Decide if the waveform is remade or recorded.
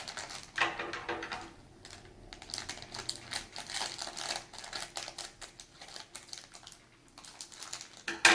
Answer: recorded